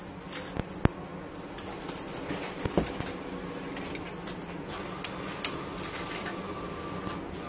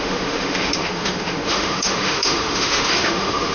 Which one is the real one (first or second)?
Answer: first